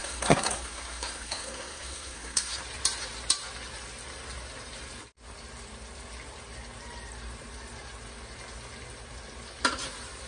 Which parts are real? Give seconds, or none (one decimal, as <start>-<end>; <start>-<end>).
2.6-10.3

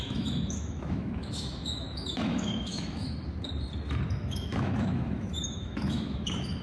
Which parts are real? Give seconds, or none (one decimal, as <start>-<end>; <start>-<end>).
3.2-4.1